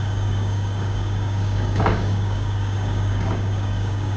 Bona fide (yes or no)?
no